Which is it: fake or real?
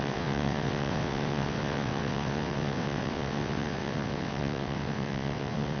fake